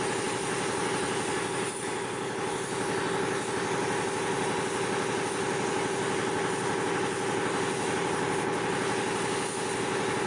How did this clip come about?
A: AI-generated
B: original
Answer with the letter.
B